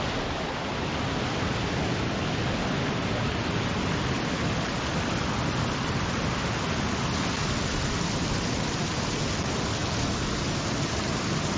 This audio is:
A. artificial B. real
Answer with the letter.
B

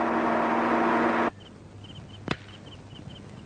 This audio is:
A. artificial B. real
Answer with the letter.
B